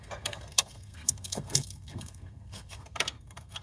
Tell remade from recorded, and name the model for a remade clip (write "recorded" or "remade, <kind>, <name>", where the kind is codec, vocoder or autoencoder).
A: remade, codec, SNAC